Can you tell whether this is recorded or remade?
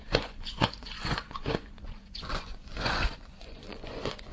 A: remade